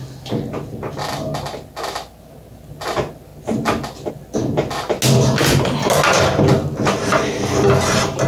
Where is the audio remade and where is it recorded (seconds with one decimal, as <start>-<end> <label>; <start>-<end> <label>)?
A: 0.0-8.3 recorded